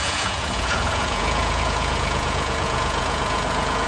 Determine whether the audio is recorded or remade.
remade